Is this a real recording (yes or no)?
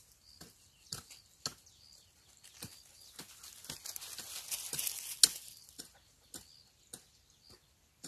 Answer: yes